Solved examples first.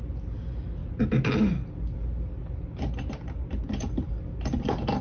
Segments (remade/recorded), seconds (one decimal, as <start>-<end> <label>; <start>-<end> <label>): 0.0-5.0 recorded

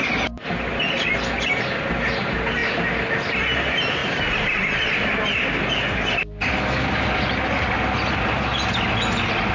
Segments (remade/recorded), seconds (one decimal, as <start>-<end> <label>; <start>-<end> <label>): 0.0-9.5 recorded

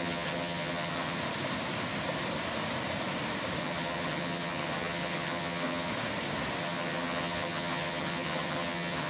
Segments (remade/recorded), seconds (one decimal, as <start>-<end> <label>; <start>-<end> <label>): 0.0-1.2 remade; 1.2-3.6 recorded; 3.6-5.9 remade; 5.9-6.6 recorded; 6.6-9.1 remade

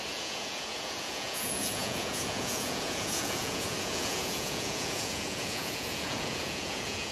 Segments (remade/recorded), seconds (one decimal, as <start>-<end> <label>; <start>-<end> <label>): 0.0-7.1 remade

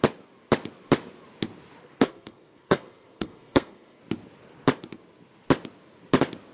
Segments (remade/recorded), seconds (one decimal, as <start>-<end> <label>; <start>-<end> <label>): 0.0-1.8 recorded; 1.8-4.0 remade; 4.0-6.5 recorded

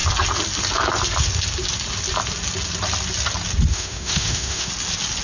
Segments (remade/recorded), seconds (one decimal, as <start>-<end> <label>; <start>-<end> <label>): 0.0-3.7 recorded; 3.7-4.7 remade; 4.7-5.2 recorded

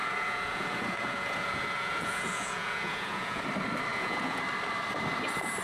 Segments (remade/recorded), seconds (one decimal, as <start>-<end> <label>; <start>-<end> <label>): 0.0-3.4 remade; 3.4-3.9 recorded; 3.9-4.4 remade; 4.4-5.6 recorded

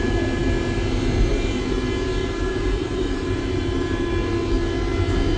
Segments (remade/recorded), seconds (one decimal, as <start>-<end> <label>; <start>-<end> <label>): 0.0-2.2 recorded; 2.2-4.1 remade; 4.1-5.4 recorded